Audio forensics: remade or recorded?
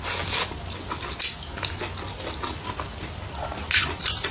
recorded